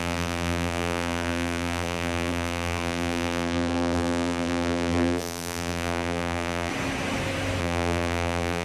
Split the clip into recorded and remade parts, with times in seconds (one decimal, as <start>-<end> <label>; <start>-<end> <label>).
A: 0.0-6.7 remade; 6.7-7.6 recorded; 7.6-8.6 remade